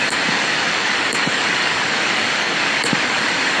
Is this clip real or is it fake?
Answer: fake